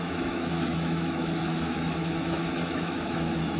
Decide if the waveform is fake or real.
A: fake